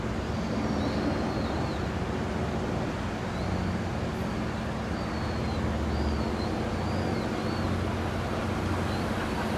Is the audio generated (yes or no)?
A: no